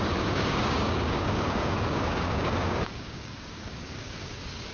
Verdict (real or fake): fake